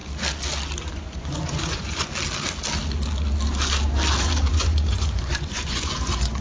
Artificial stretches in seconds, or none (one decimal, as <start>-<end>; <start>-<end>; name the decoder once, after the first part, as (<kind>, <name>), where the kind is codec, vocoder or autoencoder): 0.8-2.1 (vocoder, Vocos); 4.2-6.4

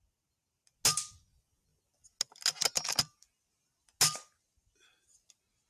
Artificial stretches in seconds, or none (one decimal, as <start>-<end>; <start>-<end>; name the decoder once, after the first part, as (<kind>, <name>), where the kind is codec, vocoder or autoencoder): none